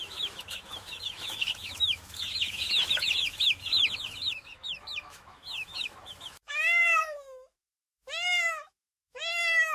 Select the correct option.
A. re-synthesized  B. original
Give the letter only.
A